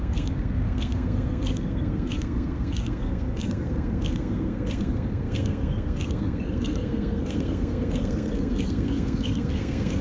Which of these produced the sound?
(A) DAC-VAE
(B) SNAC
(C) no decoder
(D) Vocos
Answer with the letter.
B